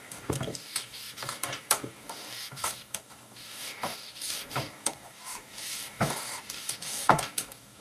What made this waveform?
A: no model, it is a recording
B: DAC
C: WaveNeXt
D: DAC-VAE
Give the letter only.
B